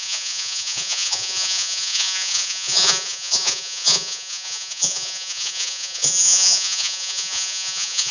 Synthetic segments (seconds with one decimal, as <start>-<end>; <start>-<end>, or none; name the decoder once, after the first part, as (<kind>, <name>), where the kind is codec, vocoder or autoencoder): 0.0-8.1 (vocoder, Vocos)